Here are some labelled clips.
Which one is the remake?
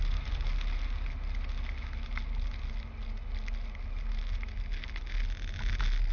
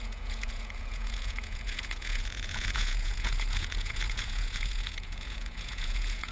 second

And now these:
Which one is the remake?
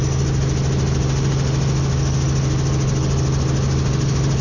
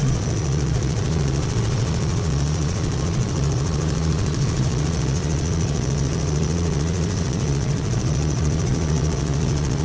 second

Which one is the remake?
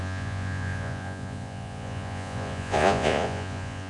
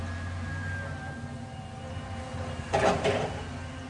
first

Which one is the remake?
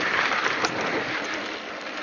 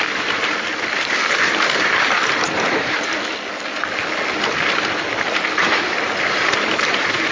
second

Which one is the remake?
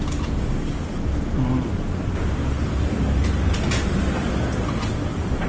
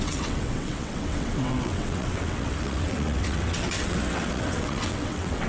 second